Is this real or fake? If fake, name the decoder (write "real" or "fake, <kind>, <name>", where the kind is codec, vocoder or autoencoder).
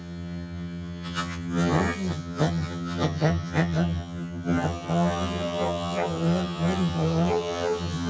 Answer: fake, vocoder, HiFi-GAN